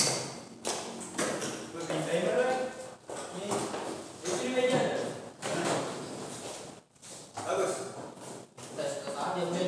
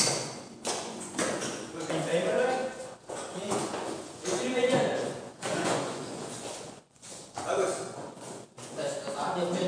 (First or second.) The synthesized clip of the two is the second